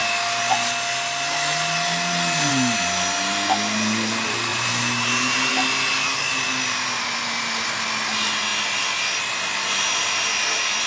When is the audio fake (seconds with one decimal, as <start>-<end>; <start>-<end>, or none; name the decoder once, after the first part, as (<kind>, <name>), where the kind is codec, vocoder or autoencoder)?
4.5-5.5 (vocoder, BigVGAN v2)